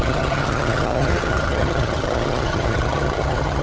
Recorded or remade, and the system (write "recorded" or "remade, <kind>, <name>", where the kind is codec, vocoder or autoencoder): remade, vocoder, HiFi-GAN